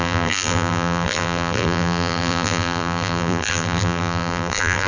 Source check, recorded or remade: remade